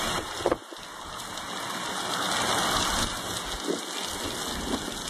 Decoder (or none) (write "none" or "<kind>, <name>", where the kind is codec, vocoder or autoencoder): none